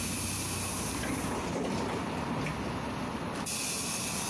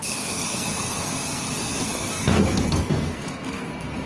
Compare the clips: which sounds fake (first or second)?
second